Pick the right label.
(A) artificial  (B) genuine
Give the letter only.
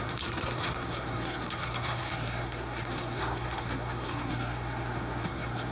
A